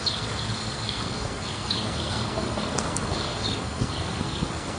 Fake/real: fake